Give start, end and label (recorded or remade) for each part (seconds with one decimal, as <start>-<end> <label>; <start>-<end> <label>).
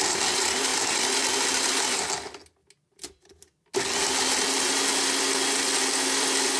0.0-6.6 recorded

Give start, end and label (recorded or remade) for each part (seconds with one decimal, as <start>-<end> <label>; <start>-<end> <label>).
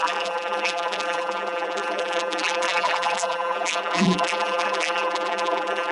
0.0-5.9 remade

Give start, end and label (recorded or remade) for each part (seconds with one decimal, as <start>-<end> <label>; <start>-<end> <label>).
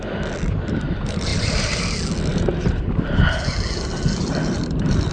0.0-1.3 recorded; 1.3-1.8 remade; 1.8-2.3 recorded; 2.3-5.1 remade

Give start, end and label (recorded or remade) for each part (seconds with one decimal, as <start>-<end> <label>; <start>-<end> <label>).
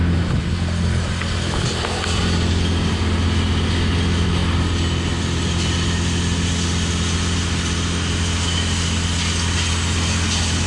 0.0-10.7 recorded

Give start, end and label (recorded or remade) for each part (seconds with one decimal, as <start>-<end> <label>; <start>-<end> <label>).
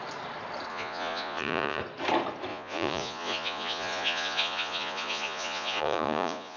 0.0-0.7 recorded; 0.7-1.8 remade; 1.8-2.5 recorded; 2.5-6.6 remade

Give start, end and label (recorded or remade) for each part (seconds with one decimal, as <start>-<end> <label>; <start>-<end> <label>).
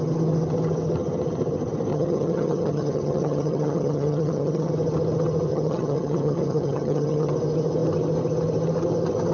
0.0-1.9 recorded; 1.9-4.7 remade; 4.7-5.5 recorded; 5.5-7.3 remade; 7.3-9.3 recorded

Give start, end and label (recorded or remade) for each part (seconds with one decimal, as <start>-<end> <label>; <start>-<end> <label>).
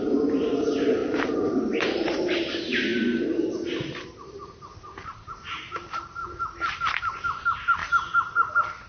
0.0-2.9 remade; 2.9-4.0 recorded; 4.0-6.2 remade; 6.2-6.8 recorded; 6.8-7.8 remade; 7.8-8.5 recorded; 8.5-8.9 remade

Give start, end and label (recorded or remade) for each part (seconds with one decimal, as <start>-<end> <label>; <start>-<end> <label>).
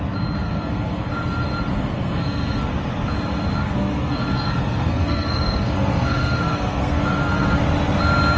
0.0-0.4 recorded; 0.4-1.1 remade; 1.1-1.7 recorded; 1.7-2.7 remade; 2.7-3.6 recorded; 3.6-7.6 remade; 7.6-8.4 recorded